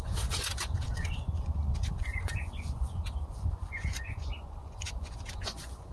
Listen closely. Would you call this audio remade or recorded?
remade